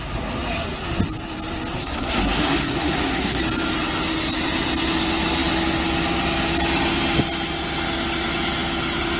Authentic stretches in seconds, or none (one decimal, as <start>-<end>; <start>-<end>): 0.0-1.8; 3.4-9.2